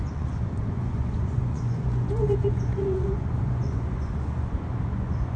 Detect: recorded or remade remade